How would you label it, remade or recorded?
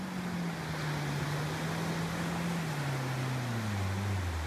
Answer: recorded